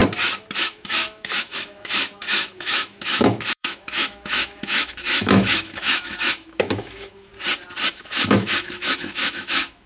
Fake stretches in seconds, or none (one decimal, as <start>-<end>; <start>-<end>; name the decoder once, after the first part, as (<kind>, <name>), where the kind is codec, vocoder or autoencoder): 0.6-7.3 (autoencoder, DAC-VAE); 7.9-9.9